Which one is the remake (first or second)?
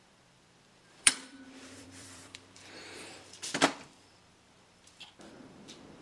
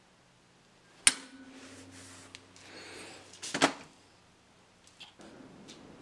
first